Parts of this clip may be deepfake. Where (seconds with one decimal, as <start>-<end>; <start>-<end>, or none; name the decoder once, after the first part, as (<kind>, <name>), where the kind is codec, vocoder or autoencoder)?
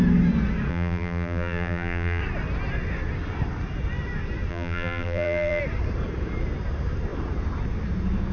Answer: 0.7-2.2 (vocoder, BigVGAN v2); 4.5-5.6